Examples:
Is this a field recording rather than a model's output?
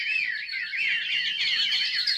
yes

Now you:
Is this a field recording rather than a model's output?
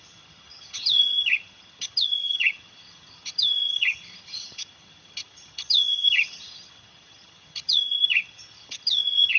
no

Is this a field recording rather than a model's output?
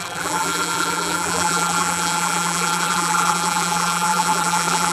no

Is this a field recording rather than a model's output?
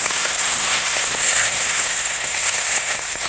no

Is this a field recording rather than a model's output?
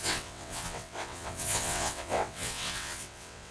no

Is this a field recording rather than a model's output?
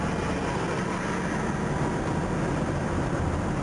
yes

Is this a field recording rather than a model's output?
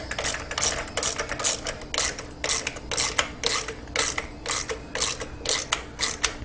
yes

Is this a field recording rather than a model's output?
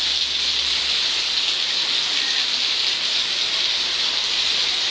yes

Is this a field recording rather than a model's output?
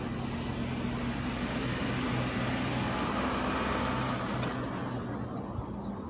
yes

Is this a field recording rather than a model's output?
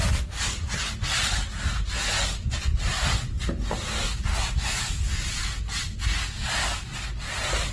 yes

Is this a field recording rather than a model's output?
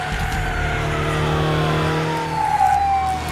yes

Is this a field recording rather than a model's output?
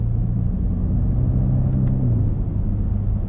yes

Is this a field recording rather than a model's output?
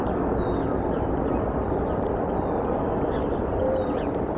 no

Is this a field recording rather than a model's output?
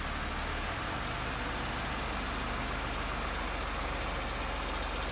yes